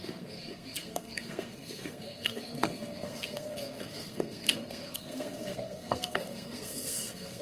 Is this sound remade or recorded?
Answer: remade